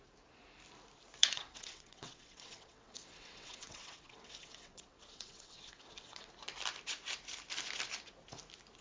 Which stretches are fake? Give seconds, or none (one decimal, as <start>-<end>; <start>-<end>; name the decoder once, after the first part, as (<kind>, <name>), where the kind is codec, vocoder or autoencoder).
1.2-6.3 (vocoder, WaveNeXt)